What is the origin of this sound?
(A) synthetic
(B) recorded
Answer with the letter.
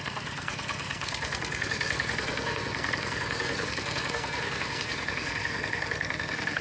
A